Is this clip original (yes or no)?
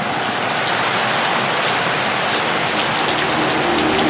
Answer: yes